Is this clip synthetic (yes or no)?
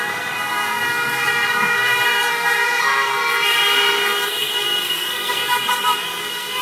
yes